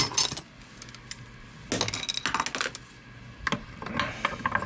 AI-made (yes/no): no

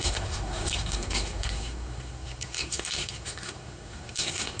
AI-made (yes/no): yes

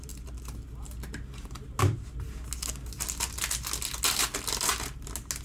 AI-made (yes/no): no